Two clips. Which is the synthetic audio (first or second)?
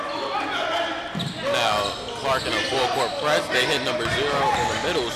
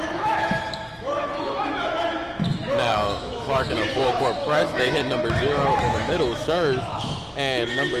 second